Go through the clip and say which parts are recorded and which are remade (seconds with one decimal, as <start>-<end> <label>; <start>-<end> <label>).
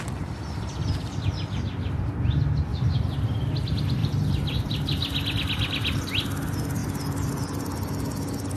0.0-2.7 recorded; 2.7-3.5 remade; 3.5-4.0 recorded; 4.0-5.0 remade; 5.0-8.6 recorded